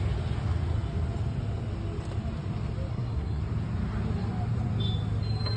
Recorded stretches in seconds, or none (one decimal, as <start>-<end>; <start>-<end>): 0.0-2.9; 3.4-5.6